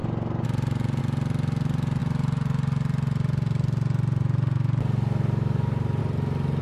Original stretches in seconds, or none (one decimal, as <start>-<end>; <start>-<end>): 0.0-6.6